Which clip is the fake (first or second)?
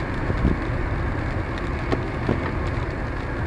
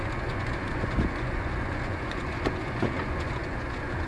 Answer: second